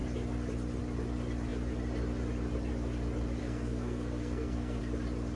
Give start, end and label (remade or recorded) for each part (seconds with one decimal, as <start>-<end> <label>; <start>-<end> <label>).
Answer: 0.0-3.4 recorded; 3.4-4.8 remade; 4.8-5.4 recorded